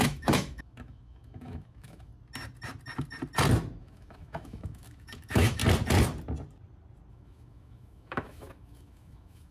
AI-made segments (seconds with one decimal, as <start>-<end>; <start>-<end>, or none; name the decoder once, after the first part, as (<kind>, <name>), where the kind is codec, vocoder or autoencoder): 0.0-2.1 (autoencoder, DAC-VAE); 3.8-5.6; 7.1-9.5